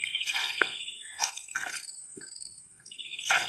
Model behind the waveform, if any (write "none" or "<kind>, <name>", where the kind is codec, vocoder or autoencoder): codec, SNAC